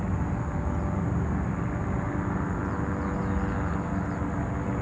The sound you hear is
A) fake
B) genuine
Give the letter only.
B